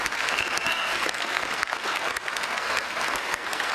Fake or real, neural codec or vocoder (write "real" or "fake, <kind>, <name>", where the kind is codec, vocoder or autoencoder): fake, codec, SNAC